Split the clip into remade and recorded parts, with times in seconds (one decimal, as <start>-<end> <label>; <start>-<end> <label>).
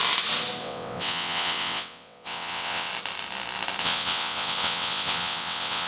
0.0-0.6 recorded; 0.6-2.9 remade; 2.9-3.8 recorded; 3.8-5.9 remade